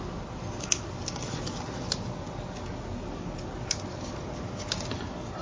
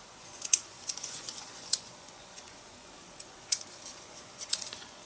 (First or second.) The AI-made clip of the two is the second